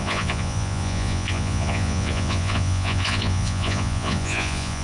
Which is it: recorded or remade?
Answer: remade